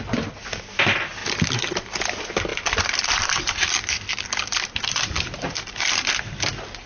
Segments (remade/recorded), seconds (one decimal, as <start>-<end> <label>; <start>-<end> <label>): 0.0-1.2 recorded; 1.2-2.0 remade; 2.0-2.5 recorded; 2.5-5.8 remade; 5.8-6.9 recorded